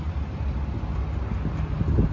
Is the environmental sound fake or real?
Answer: real